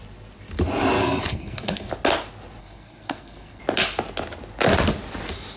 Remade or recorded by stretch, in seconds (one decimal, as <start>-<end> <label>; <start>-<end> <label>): 0.0-1.0 recorded; 1.0-1.9 remade; 1.9-2.6 recorded; 2.6-3.6 remade; 3.6-5.6 recorded